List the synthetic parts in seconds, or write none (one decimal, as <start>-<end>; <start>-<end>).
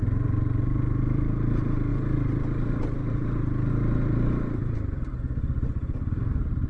none